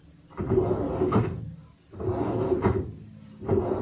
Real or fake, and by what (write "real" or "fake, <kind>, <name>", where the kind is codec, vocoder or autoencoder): real